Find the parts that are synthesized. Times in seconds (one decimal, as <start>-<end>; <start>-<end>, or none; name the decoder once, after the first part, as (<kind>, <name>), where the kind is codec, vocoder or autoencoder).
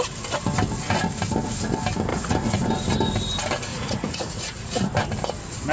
2.1-2.7 (vocoder, Vocos); 3.7-4.9